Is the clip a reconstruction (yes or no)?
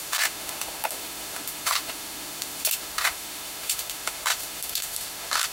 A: yes